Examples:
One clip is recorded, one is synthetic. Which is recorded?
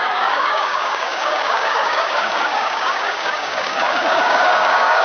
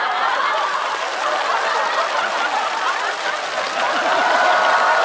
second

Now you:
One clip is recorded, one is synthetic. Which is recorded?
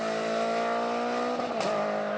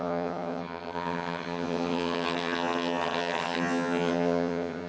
first